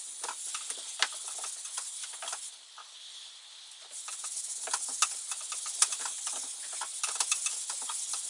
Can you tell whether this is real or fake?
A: real